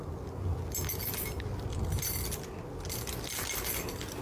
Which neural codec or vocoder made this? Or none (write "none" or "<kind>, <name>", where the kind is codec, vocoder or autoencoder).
none